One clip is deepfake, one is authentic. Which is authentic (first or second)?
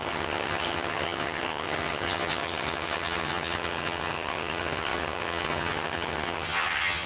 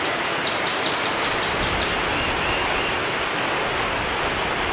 second